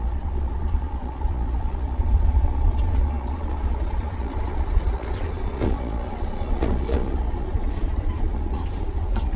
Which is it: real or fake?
fake